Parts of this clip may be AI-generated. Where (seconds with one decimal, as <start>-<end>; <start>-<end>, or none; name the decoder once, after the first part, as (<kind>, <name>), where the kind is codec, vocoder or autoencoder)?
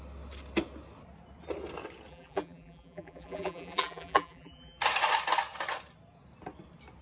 2.1-4.8 (vocoder, BigVGAN v2)